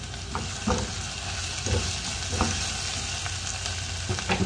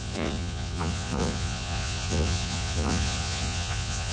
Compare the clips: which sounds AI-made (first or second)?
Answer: second